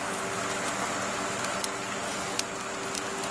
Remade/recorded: recorded